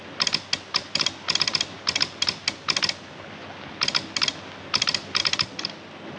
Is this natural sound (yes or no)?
yes